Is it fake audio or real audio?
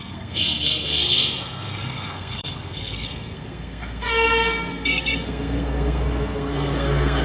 fake